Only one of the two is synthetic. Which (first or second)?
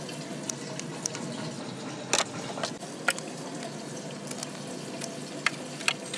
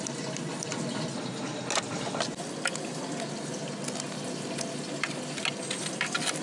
second